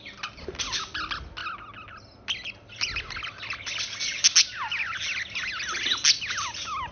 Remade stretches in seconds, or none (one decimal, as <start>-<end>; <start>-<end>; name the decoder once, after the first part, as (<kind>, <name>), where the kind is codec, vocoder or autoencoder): none